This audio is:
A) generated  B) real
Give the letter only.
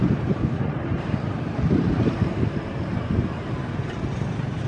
A